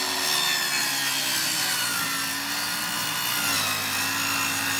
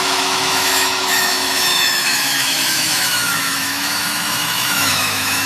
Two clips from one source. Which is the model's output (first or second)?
second